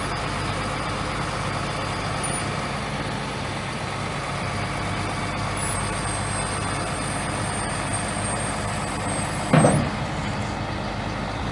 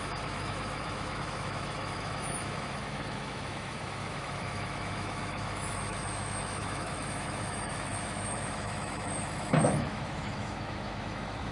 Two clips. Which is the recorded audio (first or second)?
first